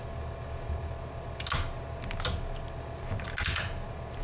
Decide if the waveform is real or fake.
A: real